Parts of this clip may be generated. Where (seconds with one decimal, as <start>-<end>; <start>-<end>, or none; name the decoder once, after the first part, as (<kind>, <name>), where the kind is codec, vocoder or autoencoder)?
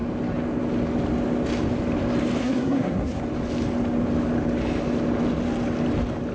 2.4-3.2 (codec, SNAC)